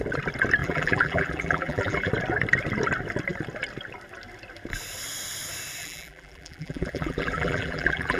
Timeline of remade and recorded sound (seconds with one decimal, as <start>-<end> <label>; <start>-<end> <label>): 0.0-0.6 recorded; 0.6-2.1 remade; 2.1-5.8 recorded; 5.8-8.2 remade